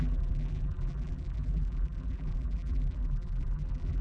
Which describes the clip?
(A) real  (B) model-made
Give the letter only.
B